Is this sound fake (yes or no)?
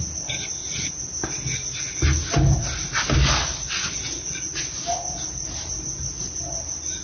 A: no